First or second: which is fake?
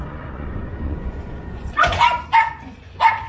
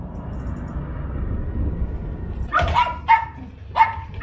first